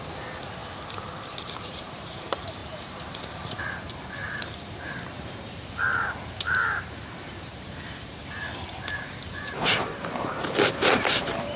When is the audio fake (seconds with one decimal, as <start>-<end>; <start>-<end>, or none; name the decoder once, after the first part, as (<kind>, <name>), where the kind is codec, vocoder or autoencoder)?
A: 0.0-0.6 (vocoder, BigVGAN v2); 1.5-8.2; 9.3-11.6